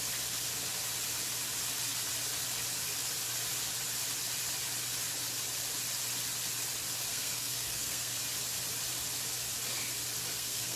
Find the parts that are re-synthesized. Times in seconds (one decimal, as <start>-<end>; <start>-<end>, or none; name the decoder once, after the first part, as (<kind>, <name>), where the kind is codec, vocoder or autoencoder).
7.1-8.2 (codec, SNAC); 10.3-10.8